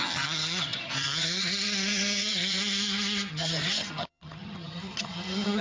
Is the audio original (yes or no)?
no